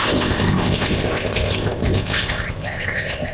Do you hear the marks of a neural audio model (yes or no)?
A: yes